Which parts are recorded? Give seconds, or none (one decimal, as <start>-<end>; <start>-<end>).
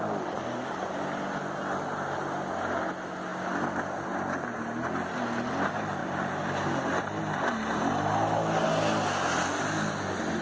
0.0-6.0; 7.2-10.4